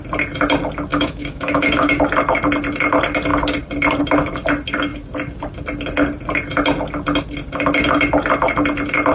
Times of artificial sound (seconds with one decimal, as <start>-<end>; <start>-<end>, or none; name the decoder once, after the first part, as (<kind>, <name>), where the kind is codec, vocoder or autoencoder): 0.9-2.0 (autoencoder, DAC-VAE)